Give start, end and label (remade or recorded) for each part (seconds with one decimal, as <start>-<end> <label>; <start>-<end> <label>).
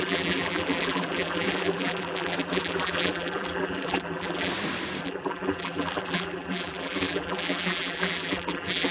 0.0-4.5 remade; 4.5-5.0 recorded; 5.0-8.9 remade